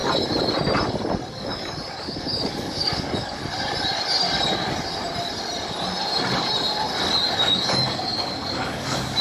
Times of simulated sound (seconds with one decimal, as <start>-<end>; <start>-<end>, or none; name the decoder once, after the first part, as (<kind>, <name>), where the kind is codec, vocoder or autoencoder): 1.3-3.4 (codec, DAC); 7.3-9.2